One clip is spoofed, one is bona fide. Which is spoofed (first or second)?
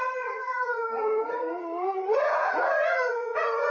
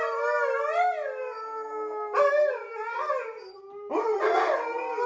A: first